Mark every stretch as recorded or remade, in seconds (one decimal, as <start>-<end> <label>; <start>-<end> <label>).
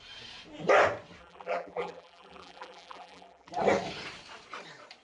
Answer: 0.0-1.2 recorded; 1.2-3.5 remade; 3.5-5.0 recorded